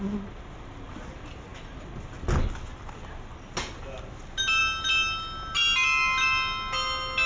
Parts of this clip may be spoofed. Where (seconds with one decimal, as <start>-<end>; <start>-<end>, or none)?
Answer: none